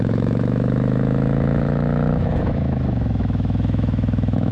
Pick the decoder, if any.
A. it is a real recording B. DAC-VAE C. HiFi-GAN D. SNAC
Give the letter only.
B